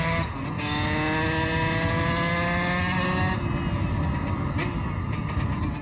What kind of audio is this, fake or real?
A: real